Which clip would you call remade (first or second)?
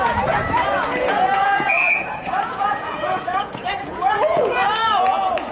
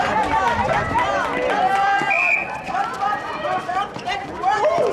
first